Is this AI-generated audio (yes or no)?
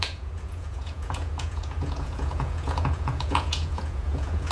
yes